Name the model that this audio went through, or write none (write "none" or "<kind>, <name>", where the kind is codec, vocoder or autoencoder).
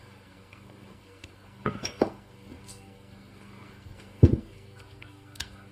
codec, SNAC